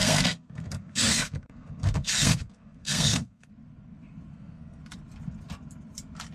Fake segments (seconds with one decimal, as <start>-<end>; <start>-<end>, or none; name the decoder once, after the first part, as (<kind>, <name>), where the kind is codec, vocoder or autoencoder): 0.0-3.5 (codec, SNAC); 4.3-4.8